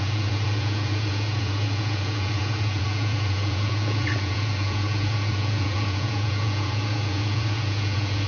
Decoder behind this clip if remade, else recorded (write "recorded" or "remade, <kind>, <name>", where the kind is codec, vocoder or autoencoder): remade, vocoder, Vocos